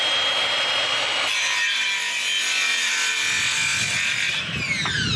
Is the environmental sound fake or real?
real